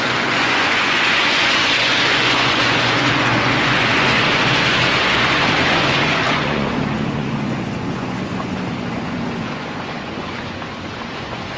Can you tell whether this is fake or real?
fake